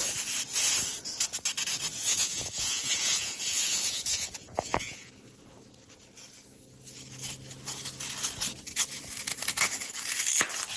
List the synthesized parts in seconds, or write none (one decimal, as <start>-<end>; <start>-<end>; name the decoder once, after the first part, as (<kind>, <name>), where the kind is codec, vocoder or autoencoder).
2.1-5.1 (vocoder, Vocos)

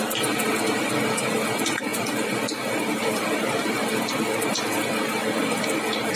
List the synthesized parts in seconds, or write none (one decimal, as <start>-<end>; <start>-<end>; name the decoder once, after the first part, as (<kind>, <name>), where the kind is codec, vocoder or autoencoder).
none

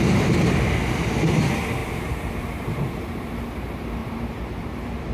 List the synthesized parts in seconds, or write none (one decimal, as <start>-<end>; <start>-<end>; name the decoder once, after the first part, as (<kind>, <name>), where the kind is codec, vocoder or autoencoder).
1.8-3.3 (vocoder, BigVGAN v2); 4.0-5.1

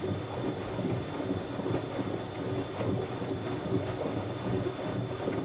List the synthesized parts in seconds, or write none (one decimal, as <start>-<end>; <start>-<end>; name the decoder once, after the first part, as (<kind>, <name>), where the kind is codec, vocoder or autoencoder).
3.4-5.4 (codec, DAC)

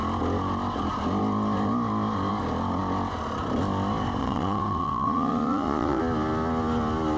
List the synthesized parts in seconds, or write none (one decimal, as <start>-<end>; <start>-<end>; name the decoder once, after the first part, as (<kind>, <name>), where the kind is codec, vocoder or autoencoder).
4.2-6.0 (vocoder, Vocos)

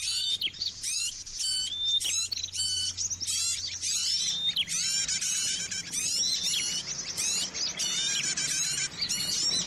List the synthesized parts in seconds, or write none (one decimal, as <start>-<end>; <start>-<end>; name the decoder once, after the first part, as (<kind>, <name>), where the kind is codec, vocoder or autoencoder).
none

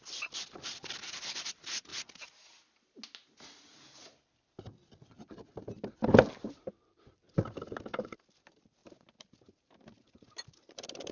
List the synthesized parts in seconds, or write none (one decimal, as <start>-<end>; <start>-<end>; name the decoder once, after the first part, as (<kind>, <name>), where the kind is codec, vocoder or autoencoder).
8.8-11.1 (vocoder, BigVGAN v2)